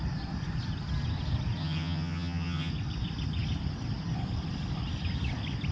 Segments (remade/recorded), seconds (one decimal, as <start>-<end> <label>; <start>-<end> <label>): 0.0-1.6 recorded; 1.6-2.7 remade; 2.7-5.7 recorded